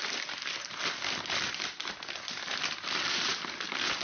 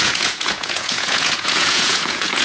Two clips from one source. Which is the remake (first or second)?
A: second